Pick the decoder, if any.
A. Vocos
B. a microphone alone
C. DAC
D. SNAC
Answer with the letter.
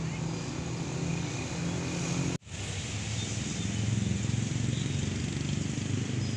B